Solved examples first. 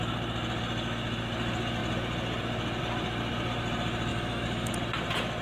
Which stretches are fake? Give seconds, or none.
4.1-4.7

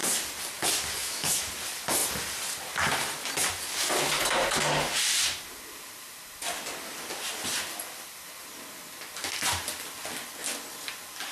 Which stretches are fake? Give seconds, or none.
1.0-1.5